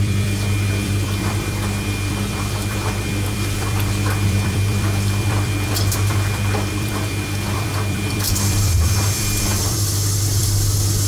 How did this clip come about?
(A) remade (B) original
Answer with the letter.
A